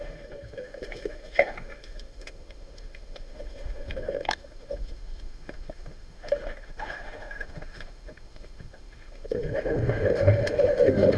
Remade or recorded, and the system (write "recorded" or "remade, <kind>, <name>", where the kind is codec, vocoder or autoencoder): remade, autoencoder, DAC-VAE